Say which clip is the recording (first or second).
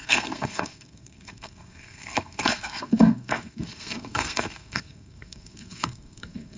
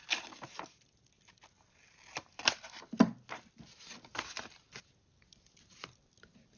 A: second